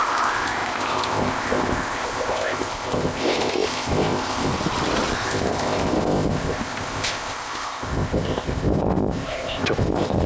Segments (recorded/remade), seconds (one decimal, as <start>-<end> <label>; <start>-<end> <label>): 0.0-4.5 remade; 4.5-5.1 recorded; 5.1-10.3 remade